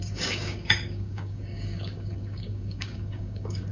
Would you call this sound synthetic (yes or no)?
yes